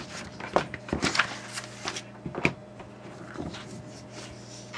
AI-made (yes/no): no